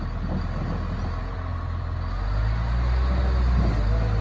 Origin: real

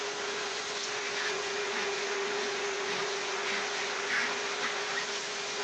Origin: fake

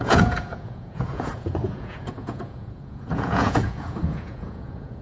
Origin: fake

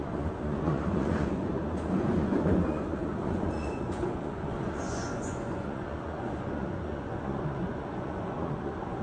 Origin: fake